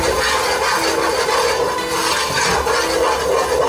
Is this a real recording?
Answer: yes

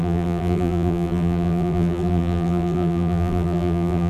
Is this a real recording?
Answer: no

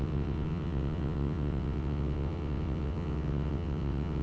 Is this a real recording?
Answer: no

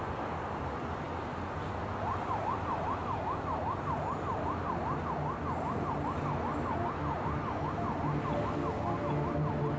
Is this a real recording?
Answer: yes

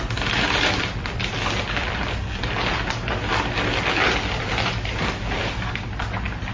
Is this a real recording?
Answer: yes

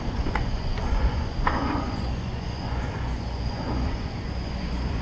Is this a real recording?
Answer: no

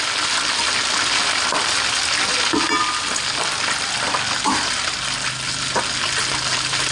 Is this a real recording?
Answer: yes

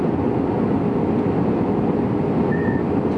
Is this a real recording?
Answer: yes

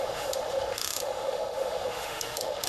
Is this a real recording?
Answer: no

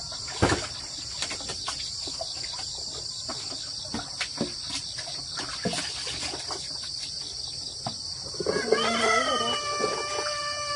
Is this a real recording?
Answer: yes